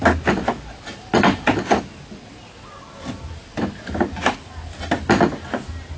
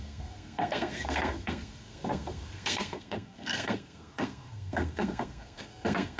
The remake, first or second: second